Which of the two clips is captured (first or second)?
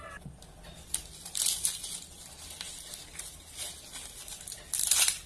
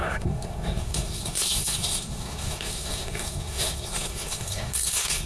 first